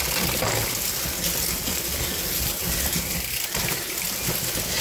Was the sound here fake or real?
real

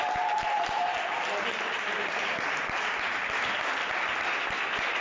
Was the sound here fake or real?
real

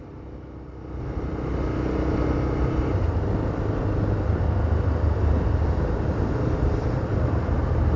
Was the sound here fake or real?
real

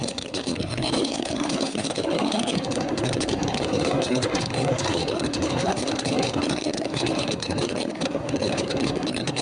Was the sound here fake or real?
fake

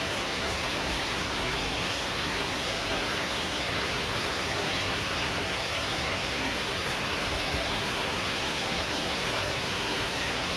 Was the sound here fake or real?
fake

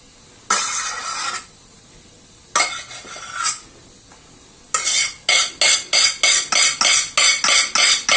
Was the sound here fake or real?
real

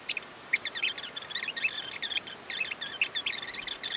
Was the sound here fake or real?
real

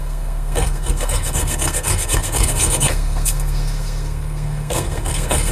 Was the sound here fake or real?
fake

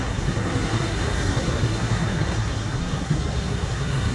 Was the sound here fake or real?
fake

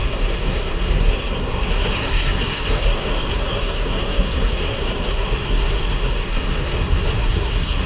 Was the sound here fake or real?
fake